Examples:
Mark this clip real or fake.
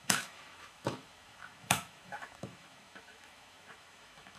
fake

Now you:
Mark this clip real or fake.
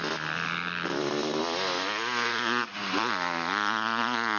real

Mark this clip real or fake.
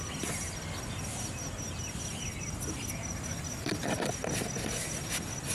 real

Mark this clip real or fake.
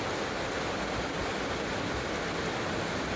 real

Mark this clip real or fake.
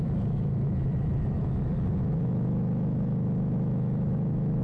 fake